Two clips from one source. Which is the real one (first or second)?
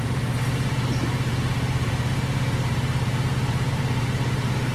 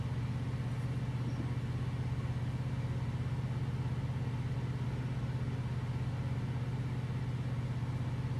second